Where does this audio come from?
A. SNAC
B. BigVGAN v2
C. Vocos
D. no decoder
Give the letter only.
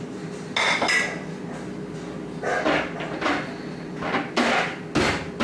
D